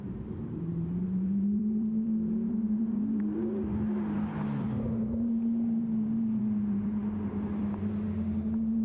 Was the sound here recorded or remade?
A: remade